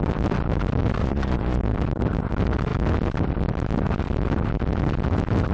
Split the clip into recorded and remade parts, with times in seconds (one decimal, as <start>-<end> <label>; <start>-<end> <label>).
0.0-1.0 recorded; 1.0-1.6 remade; 1.6-5.5 recorded